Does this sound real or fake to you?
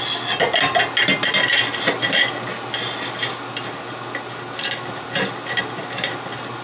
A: real